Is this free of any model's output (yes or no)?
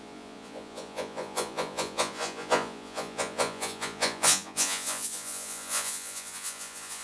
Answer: no